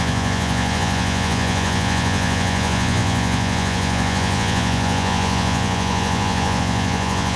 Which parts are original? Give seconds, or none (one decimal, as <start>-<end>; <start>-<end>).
none